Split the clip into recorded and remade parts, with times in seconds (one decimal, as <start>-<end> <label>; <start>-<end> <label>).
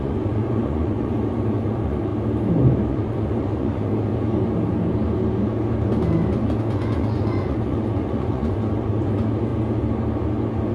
0.0-2.1 remade; 2.1-2.9 recorded; 2.9-4.1 remade; 4.1-6.4 recorded; 6.4-9.5 remade; 9.5-10.7 recorded